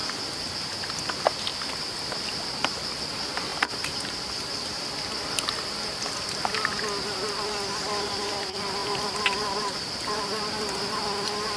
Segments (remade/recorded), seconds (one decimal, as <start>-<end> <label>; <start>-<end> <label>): 0.0-0.5 remade; 0.5-3.5 recorded; 3.5-5.1 remade; 5.1-8.8 recorded; 8.8-10.4 remade; 10.4-11.6 recorded